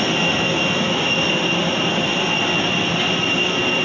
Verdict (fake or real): real